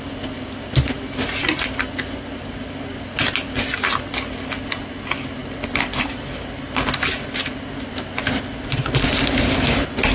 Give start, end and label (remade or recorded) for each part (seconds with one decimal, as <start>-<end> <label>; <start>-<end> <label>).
0.0-5.4 recorded; 5.4-8.8 remade; 8.8-10.1 recorded